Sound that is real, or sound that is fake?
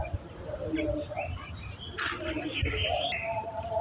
real